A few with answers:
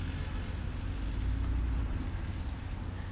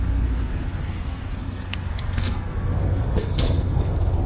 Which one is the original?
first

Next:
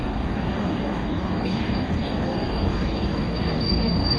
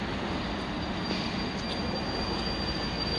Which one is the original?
second